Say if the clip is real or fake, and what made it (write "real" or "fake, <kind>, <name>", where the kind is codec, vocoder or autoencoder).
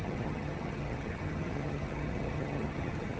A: fake, vocoder, HiFi-GAN